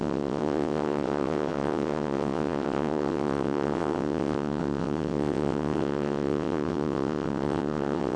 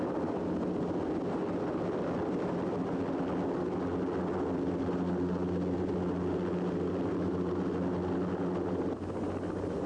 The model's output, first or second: first